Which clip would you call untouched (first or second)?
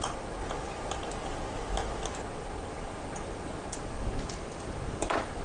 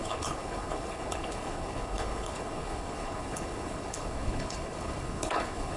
first